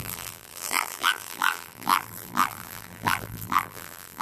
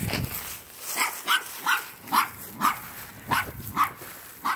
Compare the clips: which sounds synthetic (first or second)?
first